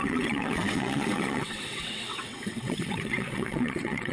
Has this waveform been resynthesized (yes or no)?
yes